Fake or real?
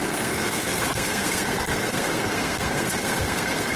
fake